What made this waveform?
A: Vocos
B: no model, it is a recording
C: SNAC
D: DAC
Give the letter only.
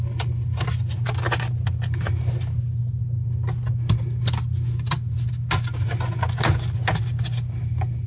B